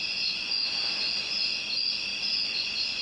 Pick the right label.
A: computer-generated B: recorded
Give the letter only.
A